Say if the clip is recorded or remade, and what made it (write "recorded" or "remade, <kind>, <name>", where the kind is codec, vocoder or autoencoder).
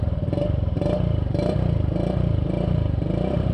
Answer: remade, vocoder, BigVGAN v2